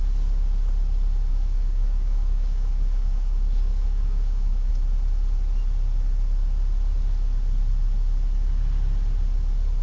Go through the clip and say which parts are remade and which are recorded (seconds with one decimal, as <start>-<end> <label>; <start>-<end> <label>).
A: 0.0-1.3 recorded; 1.3-4.7 remade; 4.7-9.8 recorded